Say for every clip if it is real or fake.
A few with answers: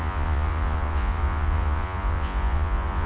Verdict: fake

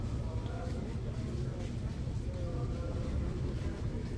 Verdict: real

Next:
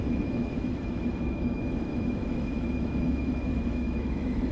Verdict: fake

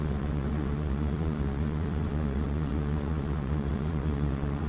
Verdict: fake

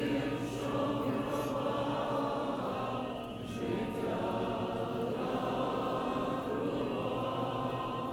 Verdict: fake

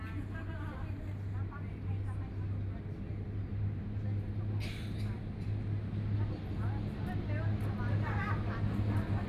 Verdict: real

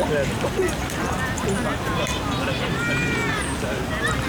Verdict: real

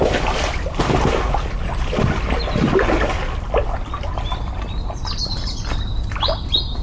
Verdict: real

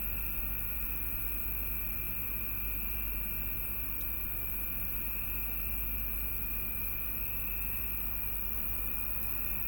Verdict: real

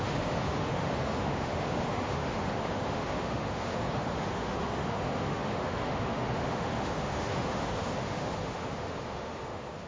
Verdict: fake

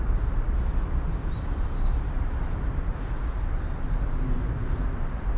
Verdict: real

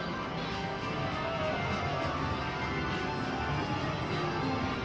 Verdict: real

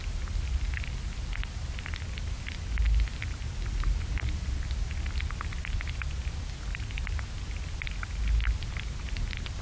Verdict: real